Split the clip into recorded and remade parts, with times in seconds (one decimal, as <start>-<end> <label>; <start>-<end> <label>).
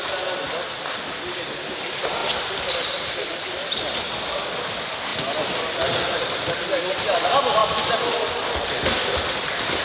0.0-9.8 recorded